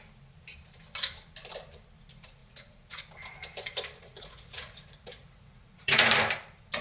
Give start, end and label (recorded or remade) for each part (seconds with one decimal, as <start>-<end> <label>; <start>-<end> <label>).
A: 0.0-2.4 recorded; 2.4-3.0 remade; 3.0-4.1 recorded; 4.1-6.1 remade; 6.1-6.8 recorded